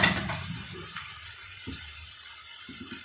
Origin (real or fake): real